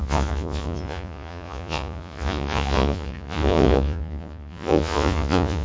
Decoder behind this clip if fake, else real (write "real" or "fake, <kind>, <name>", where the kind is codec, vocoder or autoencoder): fake, vocoder, Vocos